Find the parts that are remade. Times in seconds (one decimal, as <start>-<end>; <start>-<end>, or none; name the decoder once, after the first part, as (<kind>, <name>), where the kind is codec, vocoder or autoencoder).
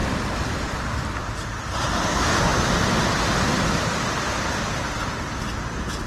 none